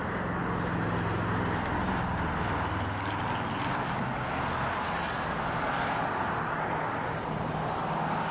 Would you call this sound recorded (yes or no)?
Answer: yes